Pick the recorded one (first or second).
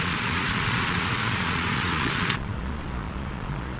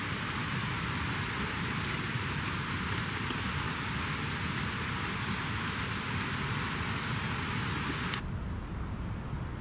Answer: second